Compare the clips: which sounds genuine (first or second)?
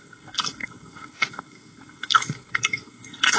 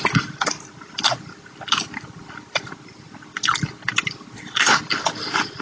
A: second